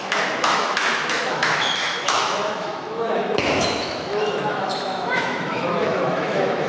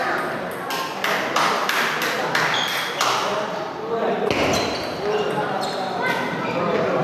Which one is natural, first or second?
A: second